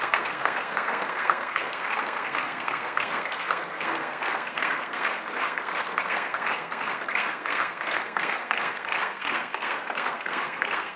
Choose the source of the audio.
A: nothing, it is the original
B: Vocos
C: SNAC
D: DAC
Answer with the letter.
C